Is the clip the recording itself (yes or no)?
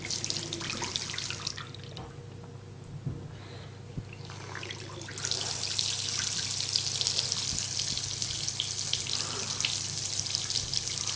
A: yes